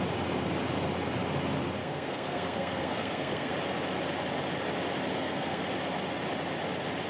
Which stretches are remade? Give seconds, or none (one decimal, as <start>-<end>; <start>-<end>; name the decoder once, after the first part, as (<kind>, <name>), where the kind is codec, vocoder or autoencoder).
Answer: 1.8-3.5 (codec, SNAC); 5.1-5.6